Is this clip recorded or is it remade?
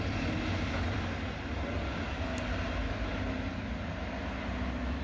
recorded